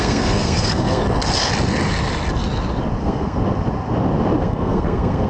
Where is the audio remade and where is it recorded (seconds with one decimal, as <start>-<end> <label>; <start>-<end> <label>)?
0.0-1.0 remade; 1.0-3.0 recorded; 3.0-3.4 remade; 3.4-4.4 recorded; 4.4-5.3 remade